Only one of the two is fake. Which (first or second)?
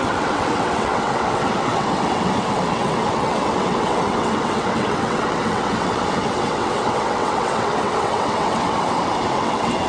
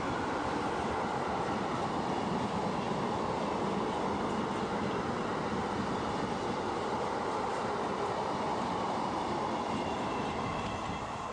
first